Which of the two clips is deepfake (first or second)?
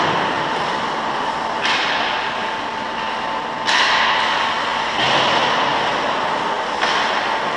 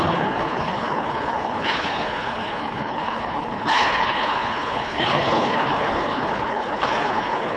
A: second